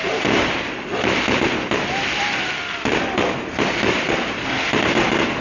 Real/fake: real